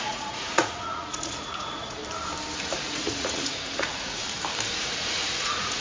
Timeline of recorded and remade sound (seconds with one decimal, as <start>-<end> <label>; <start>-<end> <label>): 0.0-2.0 remade; 2.0-2.6 recorded; 2.6-4.2 remade; 4.2-4.8 recorded; 4.8-5.8 remade